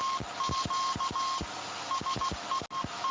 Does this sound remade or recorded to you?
recorded